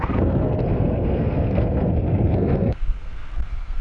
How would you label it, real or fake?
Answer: fake